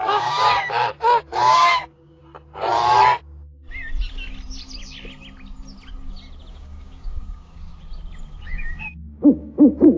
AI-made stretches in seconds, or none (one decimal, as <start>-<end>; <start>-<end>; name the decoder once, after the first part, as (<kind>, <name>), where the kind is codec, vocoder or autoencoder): 0.0-2.2 (codec, DAC); 6.5-7.7; 8.4-10.0